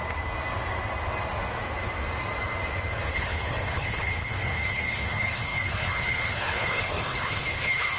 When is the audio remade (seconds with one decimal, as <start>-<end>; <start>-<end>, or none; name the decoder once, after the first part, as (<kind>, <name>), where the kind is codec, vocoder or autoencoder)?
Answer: 3.1-8.0 (codec, HILCodec)